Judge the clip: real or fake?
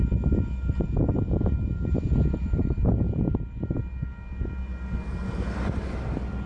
real